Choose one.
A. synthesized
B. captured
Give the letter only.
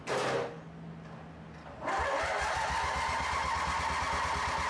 B